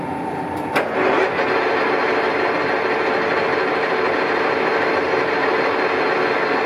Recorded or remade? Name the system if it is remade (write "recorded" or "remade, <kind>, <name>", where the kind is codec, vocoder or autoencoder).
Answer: recorded